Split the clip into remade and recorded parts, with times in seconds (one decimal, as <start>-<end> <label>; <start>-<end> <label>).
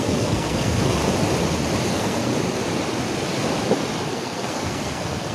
0.0-1.0 remade; 1.0-1.9 recorded; 1.9-2.3 remade; 2.3-4.1 recorded; 4.1-5.3 remade